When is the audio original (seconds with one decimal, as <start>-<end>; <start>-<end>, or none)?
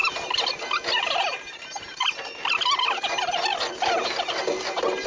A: 0.0-5.1